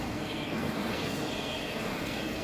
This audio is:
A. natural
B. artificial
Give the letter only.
B